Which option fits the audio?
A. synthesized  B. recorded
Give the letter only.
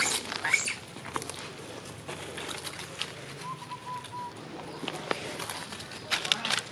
B